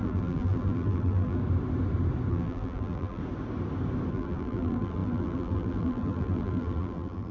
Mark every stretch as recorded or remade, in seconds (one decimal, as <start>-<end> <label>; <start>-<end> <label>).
0.0-1.4 remade; 1.4-2.3 recorded; 2.3-3.2 remade; 3.2-4.1 recorded; 4.1-7.3 remade